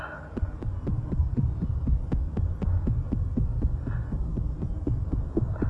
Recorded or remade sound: recorded